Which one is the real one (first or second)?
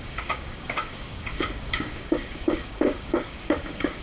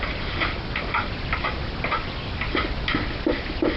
second